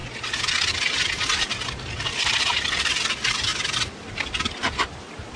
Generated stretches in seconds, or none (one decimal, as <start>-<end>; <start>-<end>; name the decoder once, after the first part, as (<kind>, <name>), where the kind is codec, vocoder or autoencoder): 0.0-0.9 (vocoder, BigVGAN v2); 3.5-4.7